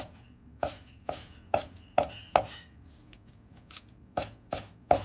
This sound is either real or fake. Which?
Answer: real